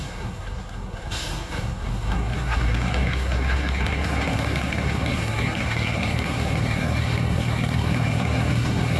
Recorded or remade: remade